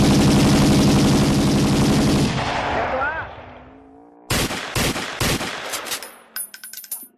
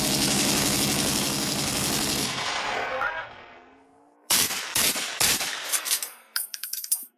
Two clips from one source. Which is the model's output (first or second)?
second